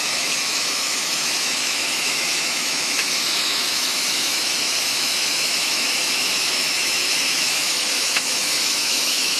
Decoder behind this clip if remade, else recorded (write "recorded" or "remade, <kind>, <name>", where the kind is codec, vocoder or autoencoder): remade, autoencoder, DAC-VAE